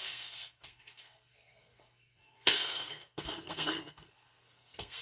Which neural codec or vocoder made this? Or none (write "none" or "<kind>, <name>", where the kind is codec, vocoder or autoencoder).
codec, SNAC